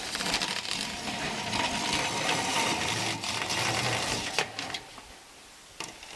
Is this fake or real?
real